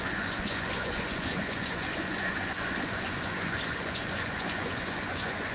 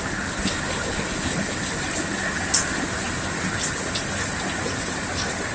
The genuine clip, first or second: second